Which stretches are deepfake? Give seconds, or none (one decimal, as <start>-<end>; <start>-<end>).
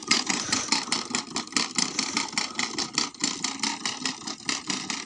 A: 0.0-0.6